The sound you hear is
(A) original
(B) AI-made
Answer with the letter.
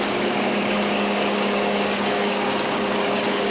B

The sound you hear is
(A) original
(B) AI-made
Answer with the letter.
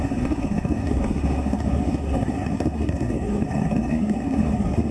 B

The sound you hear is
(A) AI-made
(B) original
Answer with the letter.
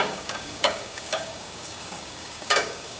A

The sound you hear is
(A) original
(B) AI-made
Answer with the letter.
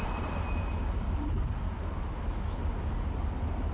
A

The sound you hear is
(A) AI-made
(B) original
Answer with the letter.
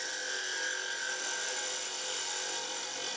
B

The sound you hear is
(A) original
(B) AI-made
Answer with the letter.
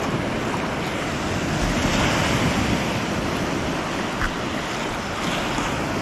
A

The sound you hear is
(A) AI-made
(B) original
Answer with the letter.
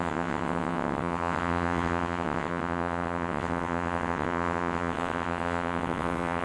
A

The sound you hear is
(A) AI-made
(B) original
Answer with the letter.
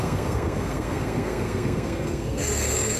A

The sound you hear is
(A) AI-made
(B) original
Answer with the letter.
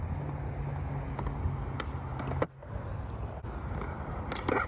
B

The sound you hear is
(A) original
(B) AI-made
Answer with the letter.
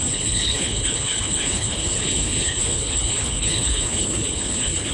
B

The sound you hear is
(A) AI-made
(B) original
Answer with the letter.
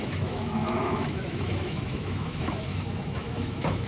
A